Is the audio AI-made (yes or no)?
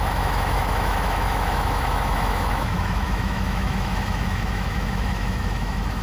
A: yes